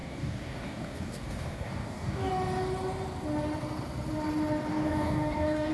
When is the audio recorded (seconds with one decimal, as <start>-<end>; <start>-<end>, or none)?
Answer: 2.3-4.7